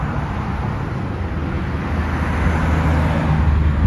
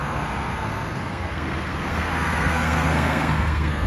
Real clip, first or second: first